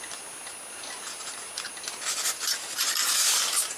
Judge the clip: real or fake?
real